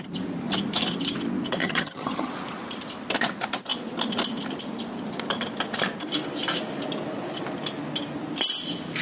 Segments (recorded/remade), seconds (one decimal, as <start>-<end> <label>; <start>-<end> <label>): 0.0-1.6 recorded; 1.6-2.3 remade; 2.3-9.0 recorded